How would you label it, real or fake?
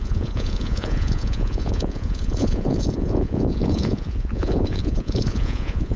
fake